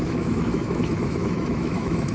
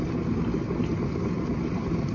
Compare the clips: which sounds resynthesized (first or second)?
first